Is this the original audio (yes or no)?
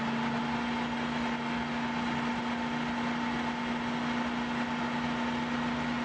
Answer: yes